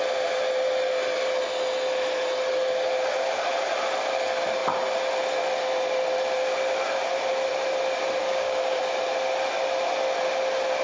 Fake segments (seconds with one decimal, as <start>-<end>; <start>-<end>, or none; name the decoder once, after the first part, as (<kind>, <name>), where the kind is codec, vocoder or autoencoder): 8.2-8.8 (codec, DAC)

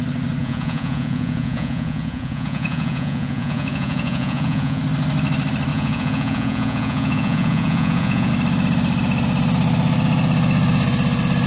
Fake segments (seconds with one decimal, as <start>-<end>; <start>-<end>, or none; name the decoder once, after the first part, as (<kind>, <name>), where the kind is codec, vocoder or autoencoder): 0.4-4.8 (vocoder, Vocos); 5.7-8.3

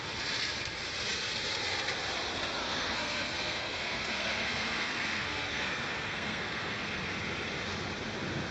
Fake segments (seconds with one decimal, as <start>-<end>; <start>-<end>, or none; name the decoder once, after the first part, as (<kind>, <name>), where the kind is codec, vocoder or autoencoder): 2.6-7.1 (codec, SNAC)

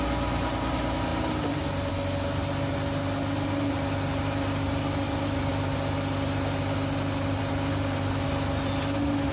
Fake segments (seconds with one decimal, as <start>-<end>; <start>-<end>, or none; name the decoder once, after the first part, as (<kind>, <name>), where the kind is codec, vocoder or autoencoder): none

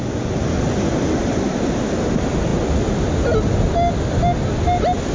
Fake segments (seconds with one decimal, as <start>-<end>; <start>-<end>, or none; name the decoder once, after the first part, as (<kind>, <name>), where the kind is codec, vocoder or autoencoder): none

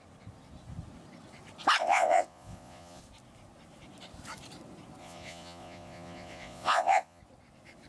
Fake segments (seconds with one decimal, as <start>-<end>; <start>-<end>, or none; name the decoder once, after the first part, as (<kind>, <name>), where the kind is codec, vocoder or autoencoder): 1.8-3.0 (vocoder, Vocos); 5.0-7.2

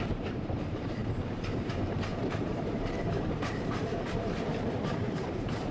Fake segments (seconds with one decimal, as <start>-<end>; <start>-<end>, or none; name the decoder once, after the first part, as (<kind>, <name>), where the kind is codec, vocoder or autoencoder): 0.0-1.0 (vocoder, BigVGAN v2); 1.7-5.7

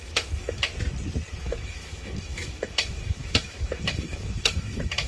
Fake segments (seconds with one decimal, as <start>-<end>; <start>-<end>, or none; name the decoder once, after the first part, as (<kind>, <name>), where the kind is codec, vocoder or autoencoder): 0.0-0.7 (autoencoder, DAC-VAE); 1.4-5.1